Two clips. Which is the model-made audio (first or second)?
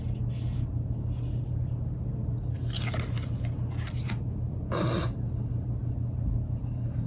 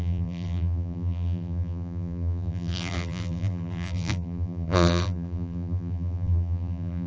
second